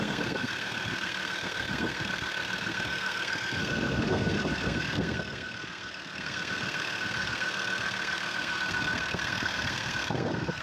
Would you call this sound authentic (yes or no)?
no